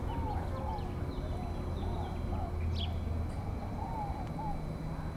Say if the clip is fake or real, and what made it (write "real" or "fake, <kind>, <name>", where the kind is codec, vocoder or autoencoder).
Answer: real